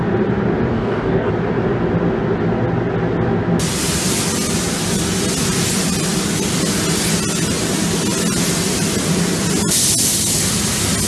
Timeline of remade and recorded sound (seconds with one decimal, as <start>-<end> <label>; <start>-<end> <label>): 0.0-0.7 recorded; 0.7-1.3 remade; 1.3-11.1 recorded